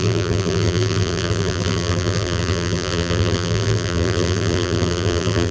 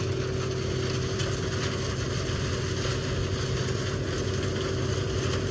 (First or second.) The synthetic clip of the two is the first